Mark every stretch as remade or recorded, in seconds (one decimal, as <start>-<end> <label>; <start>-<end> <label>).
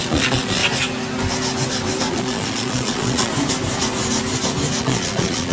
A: 0.0-0.6 remade; 0.6-2.1 recorded; 2.1-3.3 remade; 3.3-4.8 recorded; 4.8-5.5 remade